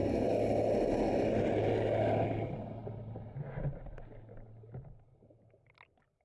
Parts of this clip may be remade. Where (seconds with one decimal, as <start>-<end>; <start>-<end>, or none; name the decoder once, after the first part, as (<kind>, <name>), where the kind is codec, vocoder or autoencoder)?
none